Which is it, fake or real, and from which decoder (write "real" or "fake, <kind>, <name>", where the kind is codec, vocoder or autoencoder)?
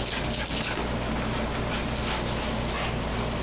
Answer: real